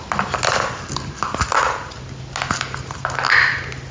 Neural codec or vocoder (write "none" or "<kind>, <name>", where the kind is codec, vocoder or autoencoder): none